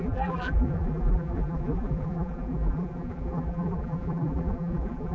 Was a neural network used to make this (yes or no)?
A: yes